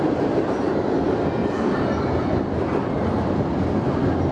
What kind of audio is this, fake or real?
real